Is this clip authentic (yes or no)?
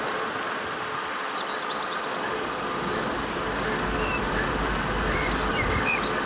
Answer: yes